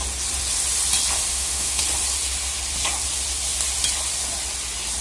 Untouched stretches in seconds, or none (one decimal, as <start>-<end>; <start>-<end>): 0.0-1.3; 1.8-5.0